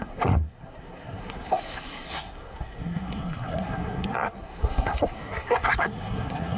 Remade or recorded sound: remade